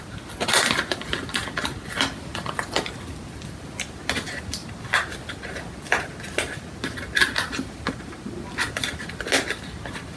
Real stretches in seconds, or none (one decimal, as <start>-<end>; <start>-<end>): 0.0-10.2